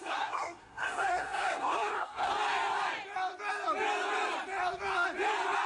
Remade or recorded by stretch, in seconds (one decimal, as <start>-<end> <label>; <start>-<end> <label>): 0.0-2.3 remade; 2.3-5.7 recorded

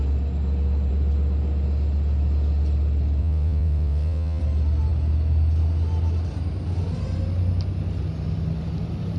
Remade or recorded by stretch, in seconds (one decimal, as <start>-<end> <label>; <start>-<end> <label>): 0.0-3.2 recorded; 3.2-4.4 remade; 4.4-9.2 recorded

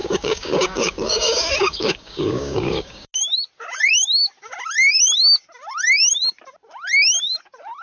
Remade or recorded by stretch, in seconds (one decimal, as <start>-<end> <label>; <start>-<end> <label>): 0.0-3.1 remade; 3.1-7.8 recorded

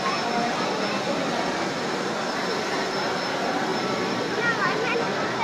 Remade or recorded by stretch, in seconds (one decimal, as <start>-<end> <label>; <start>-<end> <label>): 0.0-3.7 recorded; 3.7-5.4 remade

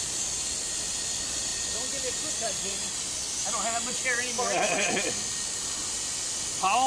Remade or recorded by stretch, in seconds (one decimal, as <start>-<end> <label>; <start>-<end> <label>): 0.0-6.9 recorded

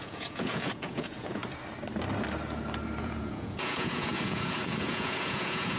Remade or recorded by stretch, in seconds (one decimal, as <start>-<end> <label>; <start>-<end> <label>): 0.0-1.4 remade; 1.4-3.0 recorded; 3.0-5.8 remade

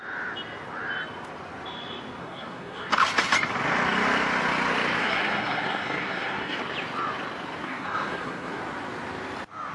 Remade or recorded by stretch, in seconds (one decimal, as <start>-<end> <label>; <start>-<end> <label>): 0.0-2.2 recorded; 2.2-2.9 remade; 2.9-5.0 recorded; 5.0-6.6 remade; 6.6-7.6 recorded; 7.6-8.6 remade; 8.6-9.7 recorded